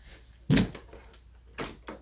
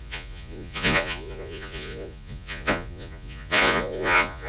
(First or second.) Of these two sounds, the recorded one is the first